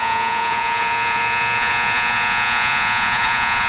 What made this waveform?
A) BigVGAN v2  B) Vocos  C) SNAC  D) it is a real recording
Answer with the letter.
B